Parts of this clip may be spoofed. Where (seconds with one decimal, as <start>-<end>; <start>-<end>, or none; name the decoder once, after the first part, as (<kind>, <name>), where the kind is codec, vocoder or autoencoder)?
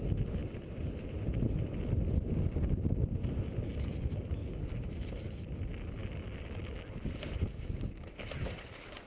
4.4-4.9 (codec, DAC)